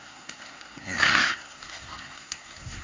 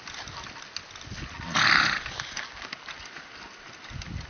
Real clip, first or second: second